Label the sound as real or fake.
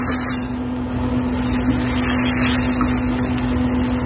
real